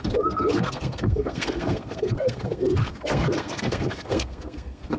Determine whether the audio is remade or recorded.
remade